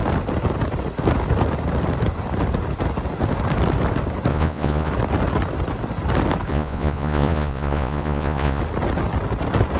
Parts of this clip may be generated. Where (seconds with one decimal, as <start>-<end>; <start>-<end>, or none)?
4.3-4.9; 6.5-8.6